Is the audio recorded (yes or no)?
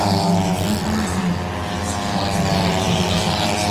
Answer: yes